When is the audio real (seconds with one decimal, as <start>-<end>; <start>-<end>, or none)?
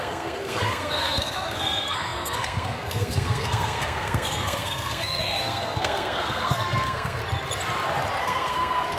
7.2-8.2